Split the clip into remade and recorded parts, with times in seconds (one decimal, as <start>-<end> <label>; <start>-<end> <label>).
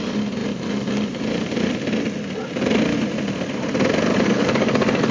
0.0-4.1 recorded; 4.1-5.1 remade